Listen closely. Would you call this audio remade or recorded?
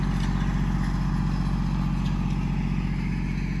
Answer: recorded